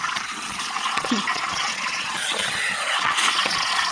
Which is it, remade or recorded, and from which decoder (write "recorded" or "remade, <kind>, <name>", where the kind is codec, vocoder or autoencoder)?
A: remade, vocoder, Vocos